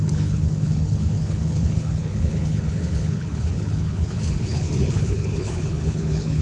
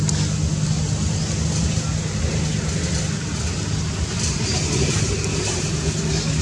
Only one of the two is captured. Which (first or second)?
second